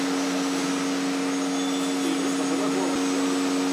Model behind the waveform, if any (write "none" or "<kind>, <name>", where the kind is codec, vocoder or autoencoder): none